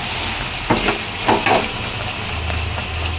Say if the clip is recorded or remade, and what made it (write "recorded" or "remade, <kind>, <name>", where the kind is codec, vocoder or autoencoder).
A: recorded